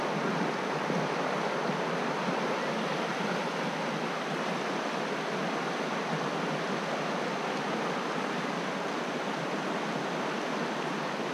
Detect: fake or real real